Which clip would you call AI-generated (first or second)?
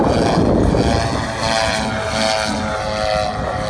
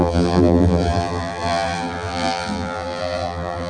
second